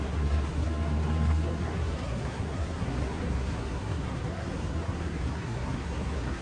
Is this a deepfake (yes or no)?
yes